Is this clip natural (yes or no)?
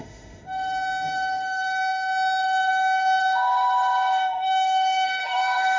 no